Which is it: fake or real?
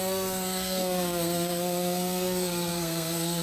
fake